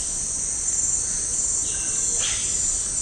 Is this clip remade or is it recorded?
recorded